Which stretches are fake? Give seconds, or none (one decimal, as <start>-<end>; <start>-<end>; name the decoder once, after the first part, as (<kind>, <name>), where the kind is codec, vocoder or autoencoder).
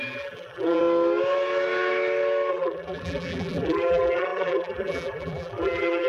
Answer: 0.0-0.8 (vocoder, BigVGAN v2); 2.5-6.1